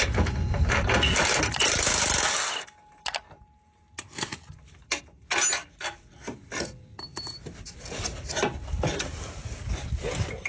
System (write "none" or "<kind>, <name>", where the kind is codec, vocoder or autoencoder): none